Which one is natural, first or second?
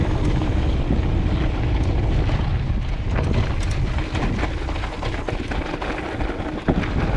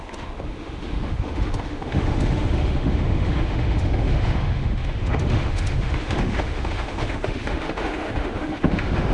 first